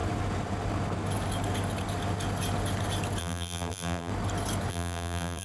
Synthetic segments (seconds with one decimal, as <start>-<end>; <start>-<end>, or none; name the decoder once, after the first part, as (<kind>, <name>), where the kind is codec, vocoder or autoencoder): 3.2-4.1 (vocoder, BigVGAN v2); 4.7-5.4